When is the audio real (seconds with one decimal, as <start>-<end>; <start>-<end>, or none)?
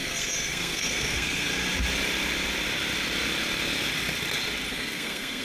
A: 1.5-4.7